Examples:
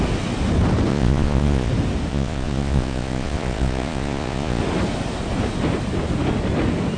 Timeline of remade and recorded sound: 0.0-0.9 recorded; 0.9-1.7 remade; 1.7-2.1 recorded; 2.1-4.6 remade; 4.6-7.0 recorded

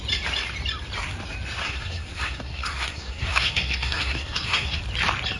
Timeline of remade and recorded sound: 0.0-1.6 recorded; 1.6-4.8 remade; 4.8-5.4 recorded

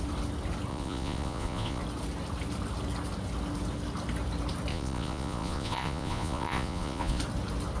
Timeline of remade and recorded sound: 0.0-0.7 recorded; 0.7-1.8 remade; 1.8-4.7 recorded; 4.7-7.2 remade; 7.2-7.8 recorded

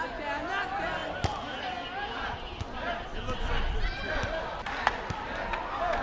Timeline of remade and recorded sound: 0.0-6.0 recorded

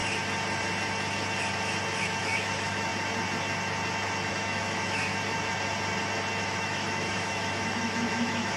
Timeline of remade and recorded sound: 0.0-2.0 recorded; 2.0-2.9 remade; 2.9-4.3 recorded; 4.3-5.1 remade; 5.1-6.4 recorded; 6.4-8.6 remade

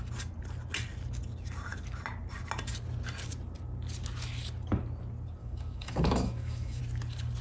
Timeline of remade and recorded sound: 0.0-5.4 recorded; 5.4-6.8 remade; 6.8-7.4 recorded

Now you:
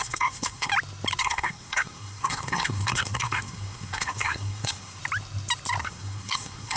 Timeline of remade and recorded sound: 0.0-0.7 remade; 0.7-1.2 recorded; 1.2-5.0 remade; 5.0-5.8 recorded; 5.8-6.8 remade

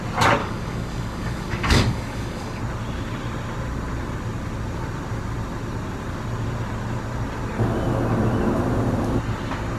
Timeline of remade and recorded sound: 0.0-0.4 recorded; 0.4-2.6 remade; 2.6-9.8 recorded